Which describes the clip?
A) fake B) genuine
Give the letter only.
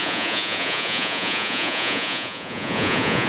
A